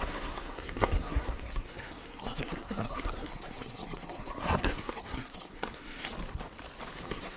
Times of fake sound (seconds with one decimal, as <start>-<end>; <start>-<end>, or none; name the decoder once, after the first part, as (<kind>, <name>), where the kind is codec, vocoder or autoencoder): 0.0-6.1 (codec, SNAC); 7.0-7.4